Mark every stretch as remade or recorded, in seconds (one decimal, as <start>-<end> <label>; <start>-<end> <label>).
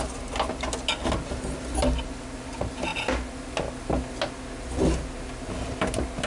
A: 0.0-6.3 recorded